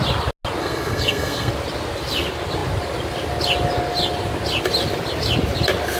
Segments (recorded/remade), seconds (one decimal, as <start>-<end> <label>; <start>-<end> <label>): 0.0-0.6 recorded; 0.6-1.5 remade; 1.5-6.0 recorded